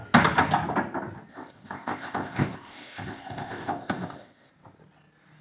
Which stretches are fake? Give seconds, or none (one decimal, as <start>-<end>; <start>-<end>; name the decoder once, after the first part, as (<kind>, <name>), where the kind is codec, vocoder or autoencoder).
1.3-4.5 (codec, ZipCodec)